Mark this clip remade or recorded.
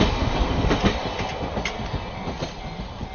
recorded